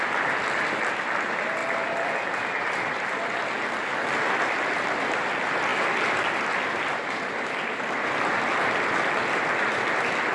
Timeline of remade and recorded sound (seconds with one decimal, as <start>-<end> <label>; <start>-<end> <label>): 0.0-10.3 recorded

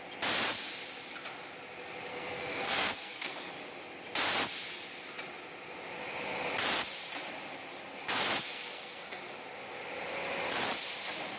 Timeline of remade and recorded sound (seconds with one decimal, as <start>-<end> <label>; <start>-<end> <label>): 0.0-2.1 recorded; 2.1-3.5 remade; 3.5-8.4 recorded; 8.4-9.2 remade; 9.2-11.4 recorded

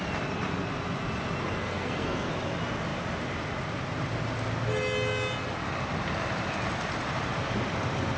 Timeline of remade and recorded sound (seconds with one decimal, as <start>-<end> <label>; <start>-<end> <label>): 0.0-1.6 recorded; 1.6-2.3 remade; 2.3-8.2 recorded